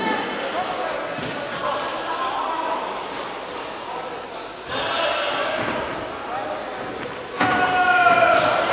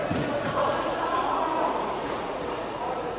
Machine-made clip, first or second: second